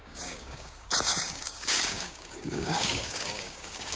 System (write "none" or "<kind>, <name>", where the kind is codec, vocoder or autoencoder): codec, DAC